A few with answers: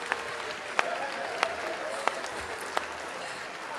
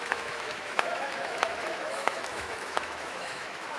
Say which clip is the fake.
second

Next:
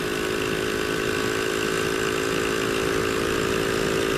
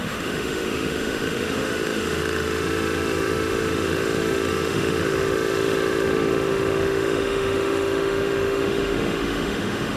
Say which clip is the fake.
second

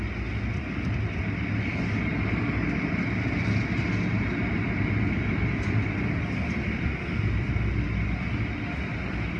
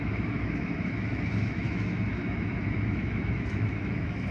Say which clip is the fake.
second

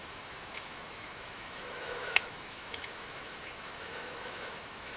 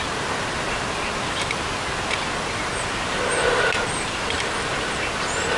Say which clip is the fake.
first